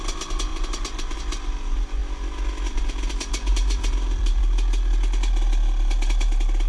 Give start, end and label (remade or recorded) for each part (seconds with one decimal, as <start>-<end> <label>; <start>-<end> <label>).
0.0-0.5 recorded; 0.5-1.2 remade; 1.2-3.5 recorded; 3.5-4.4 remade; 4.4-6.7 recorded